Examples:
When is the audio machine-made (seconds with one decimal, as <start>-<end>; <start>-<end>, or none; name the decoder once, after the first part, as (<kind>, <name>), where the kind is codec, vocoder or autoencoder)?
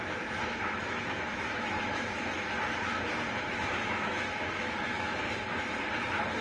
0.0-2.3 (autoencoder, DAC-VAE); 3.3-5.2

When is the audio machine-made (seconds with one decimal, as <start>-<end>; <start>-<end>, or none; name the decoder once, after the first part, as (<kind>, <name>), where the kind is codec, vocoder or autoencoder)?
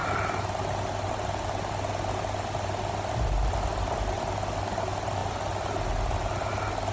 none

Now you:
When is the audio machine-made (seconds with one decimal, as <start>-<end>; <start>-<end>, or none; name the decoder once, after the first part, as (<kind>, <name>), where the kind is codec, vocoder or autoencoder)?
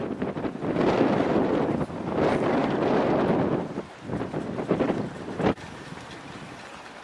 none